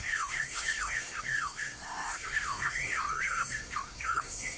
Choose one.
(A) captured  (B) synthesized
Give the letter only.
B